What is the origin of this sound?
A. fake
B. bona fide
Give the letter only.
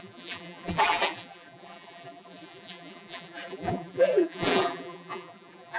A